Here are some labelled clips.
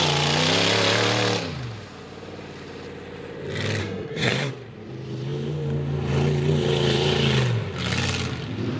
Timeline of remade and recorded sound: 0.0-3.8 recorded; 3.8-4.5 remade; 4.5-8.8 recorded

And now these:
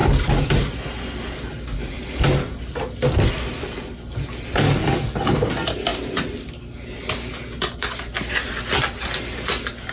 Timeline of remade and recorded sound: 0.0-9.9 recorded